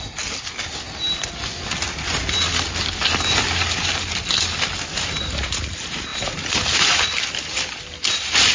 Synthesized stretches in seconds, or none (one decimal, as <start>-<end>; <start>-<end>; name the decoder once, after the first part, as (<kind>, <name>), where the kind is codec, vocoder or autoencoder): none

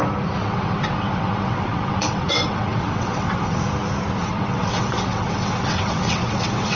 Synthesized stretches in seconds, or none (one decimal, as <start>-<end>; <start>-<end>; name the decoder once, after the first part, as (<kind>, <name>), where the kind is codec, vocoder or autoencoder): 0.4-3.6 (vocoder, WaveNeXt); 4.2-6.8

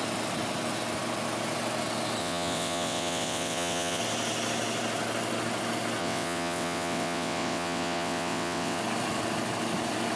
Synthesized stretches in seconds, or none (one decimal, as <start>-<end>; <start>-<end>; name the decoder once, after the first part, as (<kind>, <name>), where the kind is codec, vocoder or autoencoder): 2.2-4.0 (vocoder, WaveNeXt); 6.0-8.8

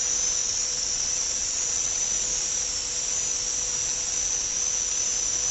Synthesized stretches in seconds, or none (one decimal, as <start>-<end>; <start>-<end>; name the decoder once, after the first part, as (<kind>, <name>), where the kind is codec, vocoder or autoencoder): 0.4-2.0 (vocoder, WaveNeXt)

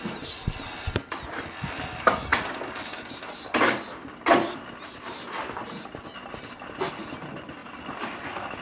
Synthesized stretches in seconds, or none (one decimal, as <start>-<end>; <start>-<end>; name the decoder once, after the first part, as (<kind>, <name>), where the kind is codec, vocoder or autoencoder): none

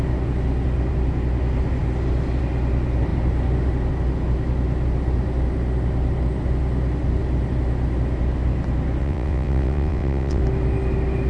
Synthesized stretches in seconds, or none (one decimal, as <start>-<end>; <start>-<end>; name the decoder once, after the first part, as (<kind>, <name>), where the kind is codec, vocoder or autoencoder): 9.0-10.4 (vocoder, WaveNeXt)

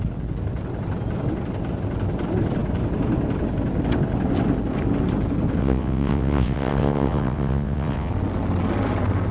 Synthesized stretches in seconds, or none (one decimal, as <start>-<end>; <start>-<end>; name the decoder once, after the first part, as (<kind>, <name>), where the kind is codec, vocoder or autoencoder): 5.6-8.1 (vocoder, WaveNeXt)

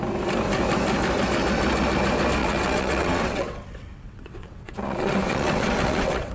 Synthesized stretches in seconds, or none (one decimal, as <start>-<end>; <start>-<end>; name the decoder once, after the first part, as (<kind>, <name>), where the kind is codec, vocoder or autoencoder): 2.4-6.3 (vocoder, WaveNeXt)